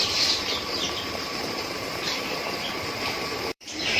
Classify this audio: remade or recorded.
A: remade